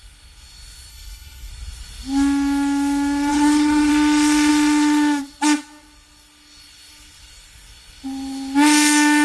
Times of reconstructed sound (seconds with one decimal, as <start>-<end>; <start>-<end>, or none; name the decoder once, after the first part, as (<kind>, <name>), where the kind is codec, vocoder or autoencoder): 0.9-1.5 (codec, HILCodec); 3.3-3.9